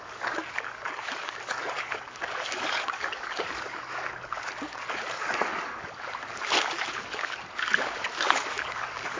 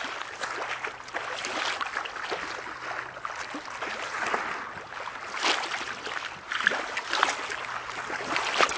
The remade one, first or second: first